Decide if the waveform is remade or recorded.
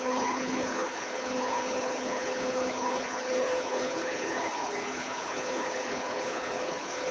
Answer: remade